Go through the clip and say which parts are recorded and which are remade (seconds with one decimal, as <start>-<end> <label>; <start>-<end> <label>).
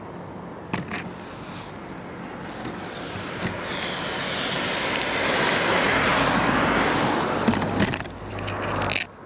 0.0-9.3 recorded